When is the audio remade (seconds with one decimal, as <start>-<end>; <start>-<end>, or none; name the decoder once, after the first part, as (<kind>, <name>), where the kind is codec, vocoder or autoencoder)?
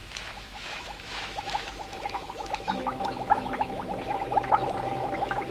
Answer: 0.0-5.5 (autoencoder, DAC-VAE)